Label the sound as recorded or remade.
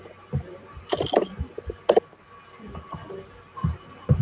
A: recorded